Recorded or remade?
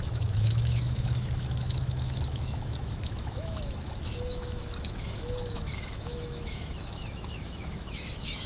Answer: remade